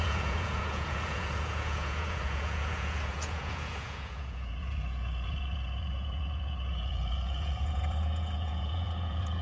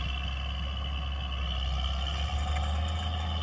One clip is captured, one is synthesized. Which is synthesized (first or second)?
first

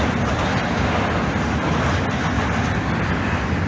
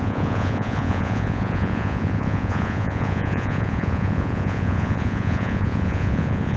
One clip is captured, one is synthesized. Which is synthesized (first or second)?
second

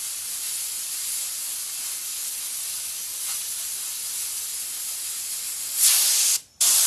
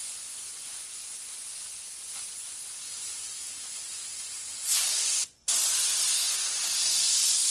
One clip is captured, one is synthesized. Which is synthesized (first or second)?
second